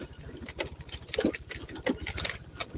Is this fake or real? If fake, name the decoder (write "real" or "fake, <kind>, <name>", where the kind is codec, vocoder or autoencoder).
real